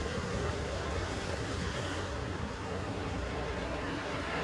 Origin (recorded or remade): remade